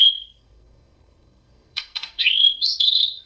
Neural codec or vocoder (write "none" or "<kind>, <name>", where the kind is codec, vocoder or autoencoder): codec, SNAC